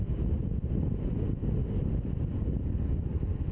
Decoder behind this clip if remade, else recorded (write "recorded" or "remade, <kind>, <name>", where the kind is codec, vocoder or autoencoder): recorded